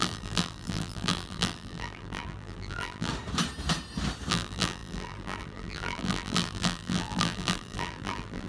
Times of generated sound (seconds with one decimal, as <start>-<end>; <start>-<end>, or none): 0.0-3.1; 4.3-8.5